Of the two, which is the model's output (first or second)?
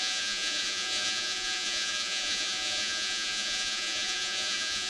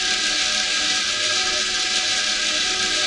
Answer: first